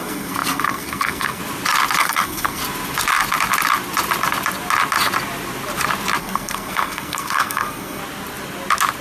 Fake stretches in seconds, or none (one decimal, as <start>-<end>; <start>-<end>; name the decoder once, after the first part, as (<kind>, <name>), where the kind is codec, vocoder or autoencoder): 0.0-1.4 (codec, SNAC); 2.0-2.6; 6.2-8.0